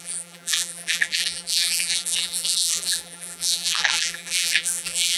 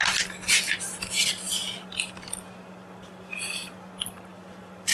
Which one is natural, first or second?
second